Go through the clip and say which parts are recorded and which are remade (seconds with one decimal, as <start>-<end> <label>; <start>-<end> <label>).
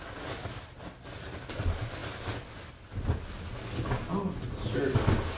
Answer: 0.0-5.4 recorded